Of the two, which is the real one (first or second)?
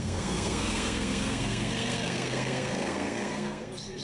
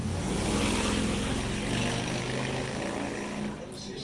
second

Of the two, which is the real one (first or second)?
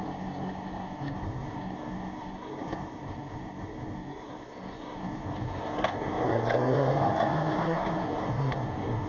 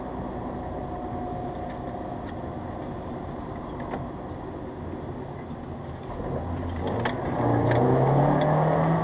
second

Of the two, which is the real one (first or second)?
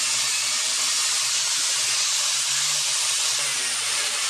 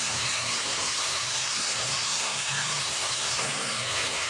first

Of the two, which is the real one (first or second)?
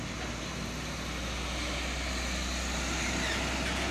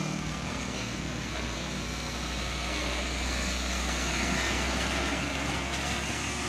first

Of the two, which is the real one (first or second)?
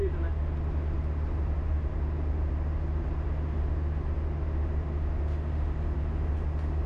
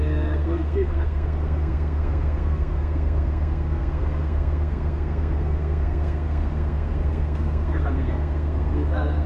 first